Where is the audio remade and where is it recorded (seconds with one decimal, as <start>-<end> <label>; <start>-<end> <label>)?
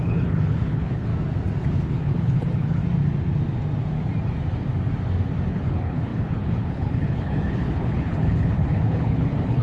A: 0.0-1.1 remade; 1.1-1.7 recorded; 1.7-2.8 remade; 2.8-5.5 recorded; 5.5-9.6 remade